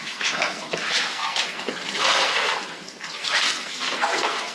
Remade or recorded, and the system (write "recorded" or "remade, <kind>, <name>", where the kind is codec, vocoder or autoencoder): remade, codec, SNAC